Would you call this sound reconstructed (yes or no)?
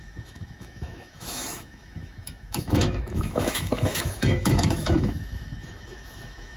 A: yes